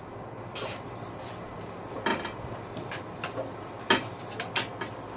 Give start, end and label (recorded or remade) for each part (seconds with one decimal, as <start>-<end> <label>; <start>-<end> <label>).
0.0-5.2 recorded